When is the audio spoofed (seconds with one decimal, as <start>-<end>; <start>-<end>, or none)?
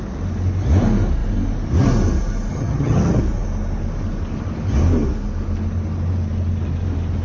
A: 2.5-3.2